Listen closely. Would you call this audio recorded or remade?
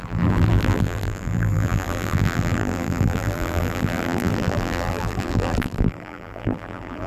remade